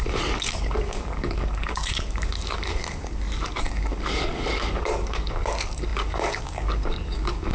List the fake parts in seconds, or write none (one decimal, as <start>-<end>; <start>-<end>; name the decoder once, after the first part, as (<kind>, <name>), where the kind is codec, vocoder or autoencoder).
0.0-7.5 (codec, DAC)